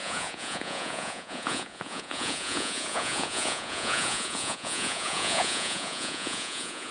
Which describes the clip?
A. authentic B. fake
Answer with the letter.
B